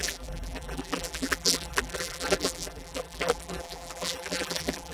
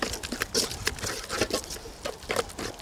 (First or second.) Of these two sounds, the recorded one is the second